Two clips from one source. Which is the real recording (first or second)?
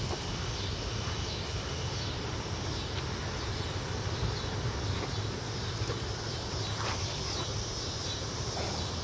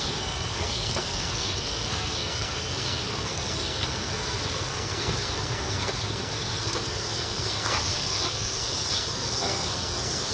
first